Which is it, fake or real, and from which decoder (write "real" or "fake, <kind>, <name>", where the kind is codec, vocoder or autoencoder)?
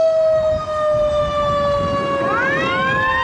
real